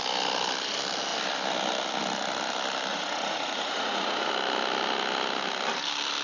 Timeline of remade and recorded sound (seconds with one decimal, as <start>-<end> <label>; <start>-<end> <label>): 0.0-2.9 recorded; 2.9-4.3 remade; 4.3-6.2 recorded